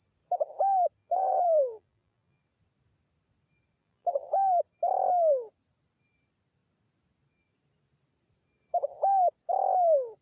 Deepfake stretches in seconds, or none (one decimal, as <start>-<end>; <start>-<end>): 1.0-2.4; 3.8-4.3